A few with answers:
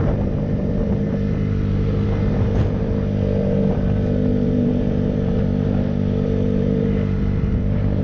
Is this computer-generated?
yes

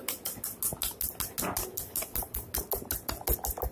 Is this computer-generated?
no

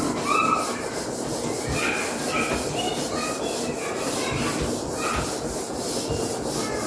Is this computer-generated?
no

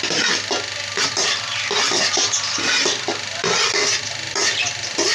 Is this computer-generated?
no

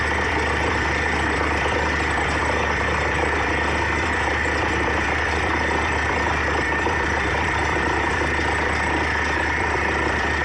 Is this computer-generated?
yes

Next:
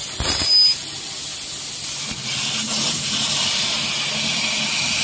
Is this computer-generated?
no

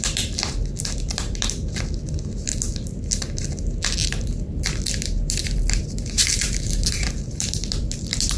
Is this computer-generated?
yes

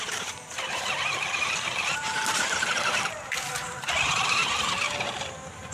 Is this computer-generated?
yes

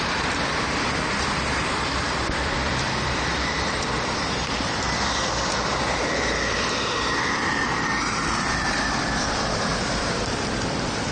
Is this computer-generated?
yes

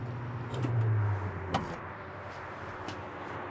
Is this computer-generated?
no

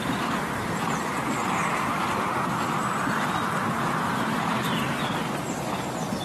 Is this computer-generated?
no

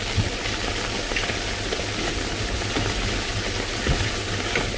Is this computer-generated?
no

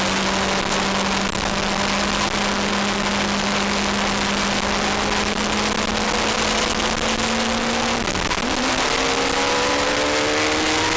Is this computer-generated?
no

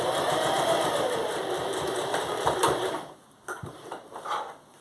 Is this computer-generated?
yes